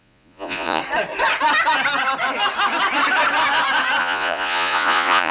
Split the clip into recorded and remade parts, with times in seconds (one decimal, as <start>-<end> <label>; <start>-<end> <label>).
0.0-0.8 remade; 0.8-4.0 recorded; 4.0-5.3 remade